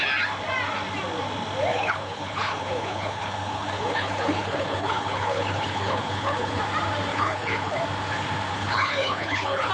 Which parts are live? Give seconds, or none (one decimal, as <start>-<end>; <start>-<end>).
0.0-1.7; 6.6-7.1; 7.8-8.5